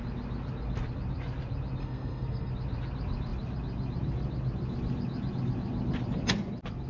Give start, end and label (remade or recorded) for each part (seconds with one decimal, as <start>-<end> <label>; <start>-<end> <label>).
0.0-1.8 recorded; 1.8-2.5 remade; 2.5-6.9 recorded